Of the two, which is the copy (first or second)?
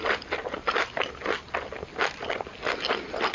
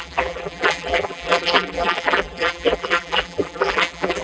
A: second